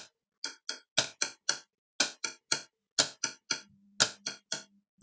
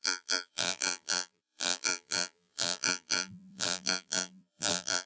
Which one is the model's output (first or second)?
second